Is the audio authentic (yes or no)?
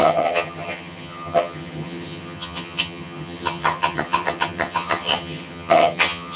no